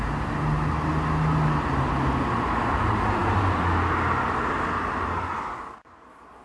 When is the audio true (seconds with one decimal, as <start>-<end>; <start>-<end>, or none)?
0.0-6.4